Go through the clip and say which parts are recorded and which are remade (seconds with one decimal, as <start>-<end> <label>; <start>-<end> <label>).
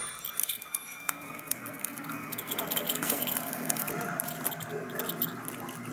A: 0.0-0.4 recorded; 0.4-3.9 remade; 3.9-5.9 recorded